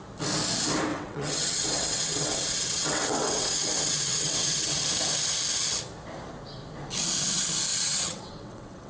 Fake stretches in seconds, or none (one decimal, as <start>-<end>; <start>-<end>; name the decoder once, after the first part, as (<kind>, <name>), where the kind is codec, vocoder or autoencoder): 0.9-4.8 (vocoder, WaveNeXt); 7.7-8.9